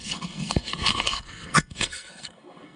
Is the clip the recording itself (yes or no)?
no